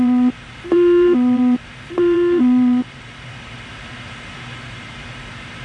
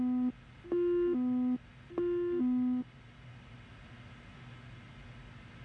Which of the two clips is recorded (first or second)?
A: second